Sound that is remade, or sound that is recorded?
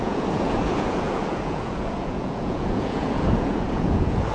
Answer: remade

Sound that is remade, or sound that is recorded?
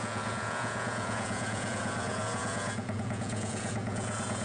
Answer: remade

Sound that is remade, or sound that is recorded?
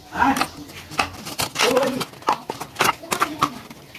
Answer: recorded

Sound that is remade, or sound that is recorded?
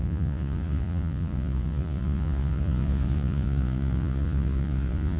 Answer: remade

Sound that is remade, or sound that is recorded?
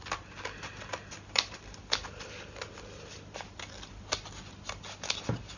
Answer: recorded